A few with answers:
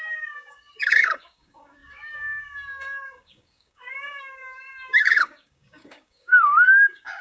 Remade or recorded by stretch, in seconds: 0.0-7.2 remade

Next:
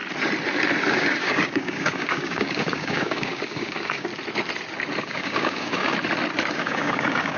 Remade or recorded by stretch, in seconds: 0.0-0.9 recorded; 0.9-4.1 remade; 4.1-5.0 recorded; 5.0-5.9 remade; 5.9-6.5 recorded; 6.5-7.4 remade

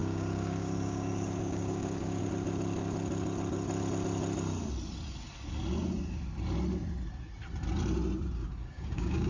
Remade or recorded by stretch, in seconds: 0.0-2.2 remade; 2.2-8.4 recorded; 8.4-9.3 remade

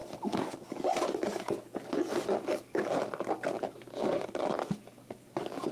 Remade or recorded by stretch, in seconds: 0.0-3.0 remade; 3.0-4.0 recorded; 4.0-5.7 remade

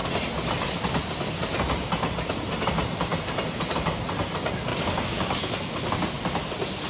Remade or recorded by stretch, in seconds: 0.0-4.7 recorded; 4.7-5.4 remade; 5.4-6.9 recorded